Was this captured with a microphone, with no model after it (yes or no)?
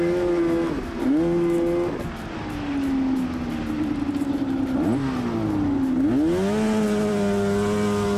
yes